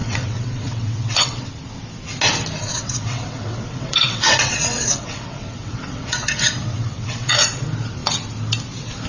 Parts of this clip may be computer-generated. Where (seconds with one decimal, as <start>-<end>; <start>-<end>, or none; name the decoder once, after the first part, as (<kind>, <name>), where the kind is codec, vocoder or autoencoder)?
0.0-1.5 (vocoder, WaveNeXt); 2.7-7.5